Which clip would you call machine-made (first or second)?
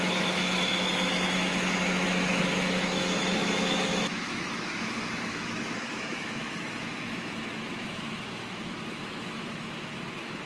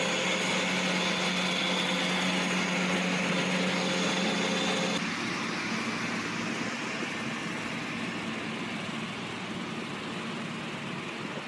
first